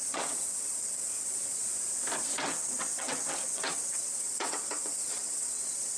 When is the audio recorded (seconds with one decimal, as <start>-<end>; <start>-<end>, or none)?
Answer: 1.6-2.4